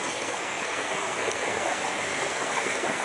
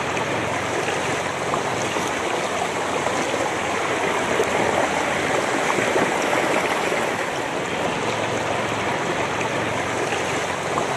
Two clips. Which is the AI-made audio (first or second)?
first